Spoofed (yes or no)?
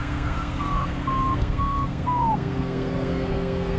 yes